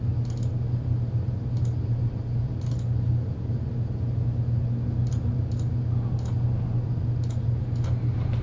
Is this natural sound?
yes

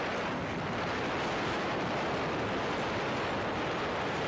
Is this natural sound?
yes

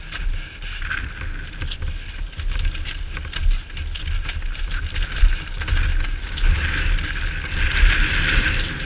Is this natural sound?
yes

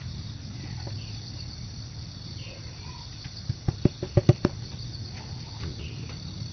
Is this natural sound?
yes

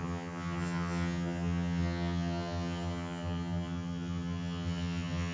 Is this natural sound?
no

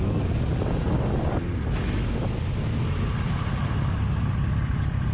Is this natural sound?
yes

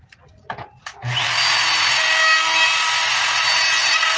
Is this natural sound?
yes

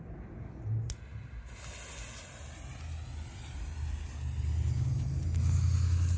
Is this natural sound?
yes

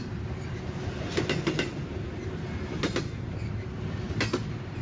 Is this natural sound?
yes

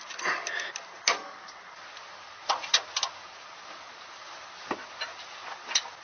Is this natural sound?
yes